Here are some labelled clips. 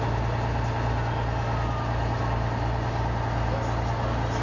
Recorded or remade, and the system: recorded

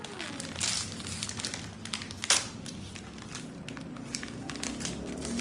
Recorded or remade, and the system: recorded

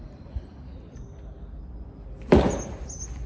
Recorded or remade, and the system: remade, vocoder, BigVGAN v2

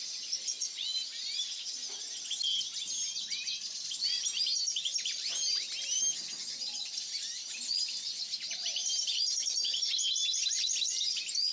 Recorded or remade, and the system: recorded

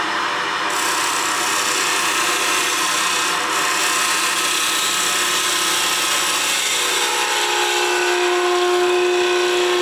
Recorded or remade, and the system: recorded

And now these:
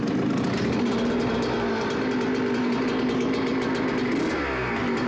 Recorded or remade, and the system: recorded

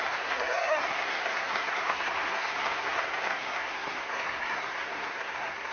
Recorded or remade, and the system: remade, codec, SNAC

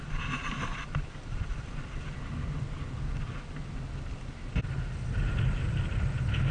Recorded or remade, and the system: recorded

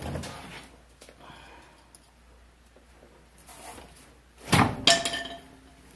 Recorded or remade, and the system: recorded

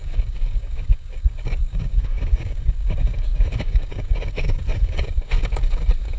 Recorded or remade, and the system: remade, codec, DAC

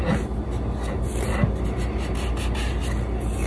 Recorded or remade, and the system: recorded